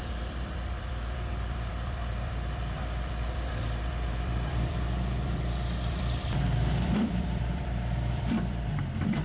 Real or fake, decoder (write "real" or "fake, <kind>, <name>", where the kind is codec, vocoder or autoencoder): fake, vocoder, BigVGAN v2